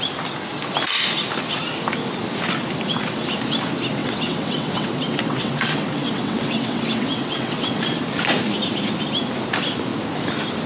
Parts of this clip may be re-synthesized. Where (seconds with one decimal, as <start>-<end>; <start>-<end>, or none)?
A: 4.0-7.8